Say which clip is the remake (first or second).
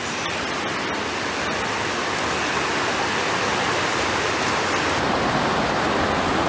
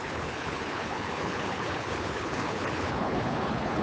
second